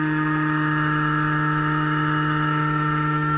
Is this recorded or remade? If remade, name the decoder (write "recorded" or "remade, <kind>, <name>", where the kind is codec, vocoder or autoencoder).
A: remade, autoencoder, DAC-VAE